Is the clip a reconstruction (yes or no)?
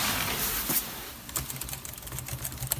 no